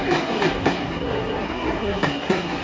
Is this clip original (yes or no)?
no